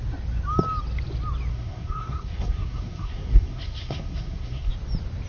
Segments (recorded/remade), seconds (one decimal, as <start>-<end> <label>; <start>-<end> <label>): 0.0-1.5 recorded; 1.5-4.7 remade; 4.7-5.3 recorded